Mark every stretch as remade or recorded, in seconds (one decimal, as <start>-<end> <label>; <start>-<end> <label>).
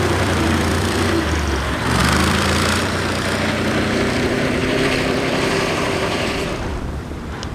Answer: 0.0-7.5 remade